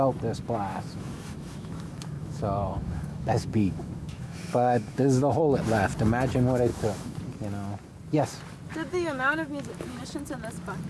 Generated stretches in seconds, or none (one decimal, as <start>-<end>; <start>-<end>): 0.7-5.4; 6.7-7.2; 8.7-10.0